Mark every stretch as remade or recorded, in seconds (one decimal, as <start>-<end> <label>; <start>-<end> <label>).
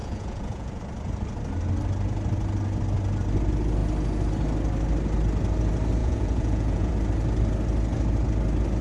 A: 0.0-0.8 remade; 0.8-6.0 recorded; 6.0-6.9 remade; 6.9-8.8 recorded